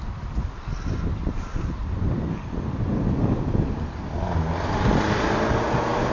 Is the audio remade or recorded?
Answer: recorded